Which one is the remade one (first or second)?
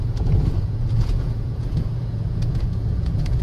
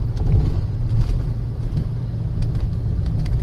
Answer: first